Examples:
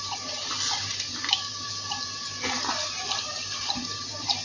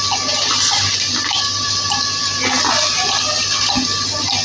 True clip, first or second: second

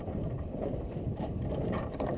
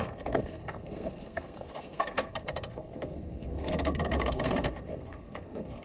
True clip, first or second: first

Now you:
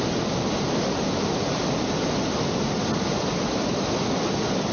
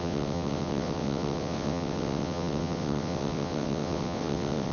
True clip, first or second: first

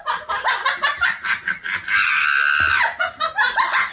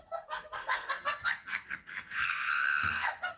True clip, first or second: first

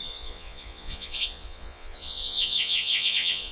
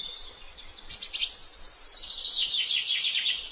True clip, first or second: second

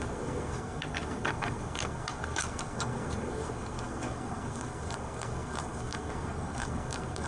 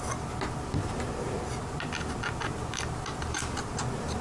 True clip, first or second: second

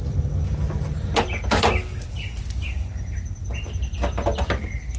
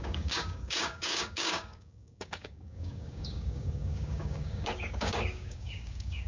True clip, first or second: first